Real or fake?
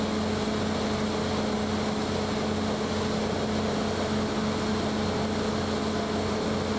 real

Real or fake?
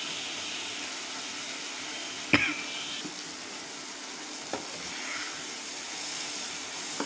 real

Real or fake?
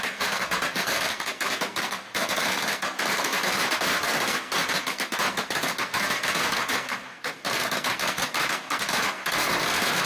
fake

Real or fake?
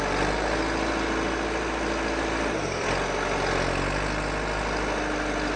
real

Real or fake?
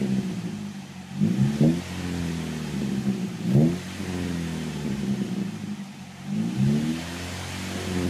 real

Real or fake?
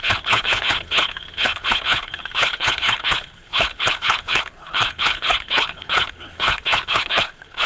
fake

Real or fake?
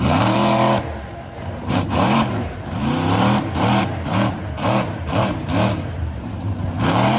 fake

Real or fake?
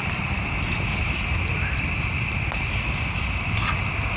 real